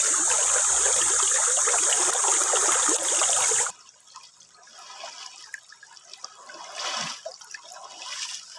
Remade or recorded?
recorded